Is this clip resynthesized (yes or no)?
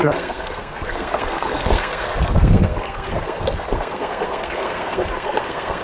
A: yes